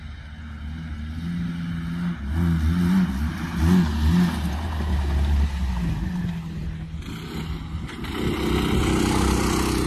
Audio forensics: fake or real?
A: real